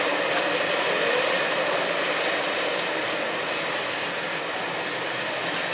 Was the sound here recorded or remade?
recorded